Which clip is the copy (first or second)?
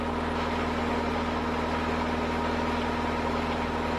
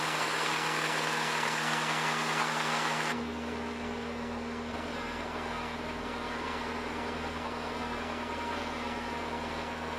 second